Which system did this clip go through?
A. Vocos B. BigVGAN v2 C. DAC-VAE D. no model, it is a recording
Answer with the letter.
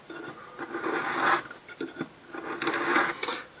D